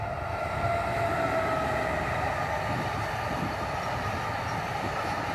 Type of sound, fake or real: real